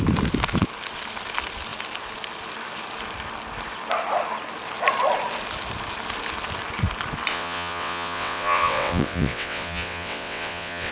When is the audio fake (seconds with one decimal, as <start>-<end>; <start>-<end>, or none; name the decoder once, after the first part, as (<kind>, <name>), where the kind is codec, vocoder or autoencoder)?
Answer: 7.3-10.9 (vocoder, WaveNeXt)